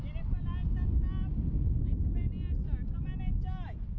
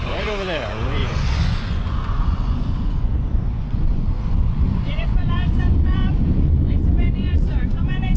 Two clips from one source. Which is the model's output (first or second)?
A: second